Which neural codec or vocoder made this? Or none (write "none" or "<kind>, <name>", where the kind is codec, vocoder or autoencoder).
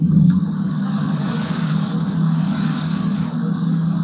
codec, DAC